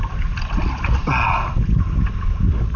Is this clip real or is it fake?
real